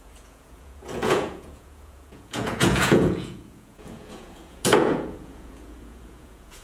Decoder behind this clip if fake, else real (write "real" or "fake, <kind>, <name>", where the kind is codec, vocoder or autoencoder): fake, vocoder, Vocos